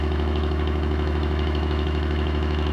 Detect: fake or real fake